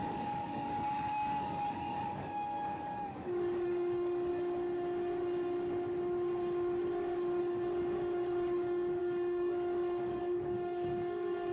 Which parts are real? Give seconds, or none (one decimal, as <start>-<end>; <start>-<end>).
4.3-7.4